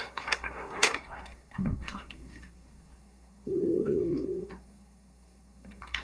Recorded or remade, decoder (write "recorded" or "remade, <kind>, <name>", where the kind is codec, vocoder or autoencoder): remade, codec, SNAC